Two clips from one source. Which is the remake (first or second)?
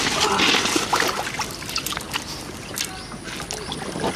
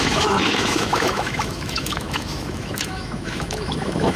second